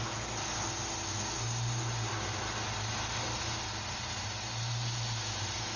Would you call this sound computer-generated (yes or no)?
no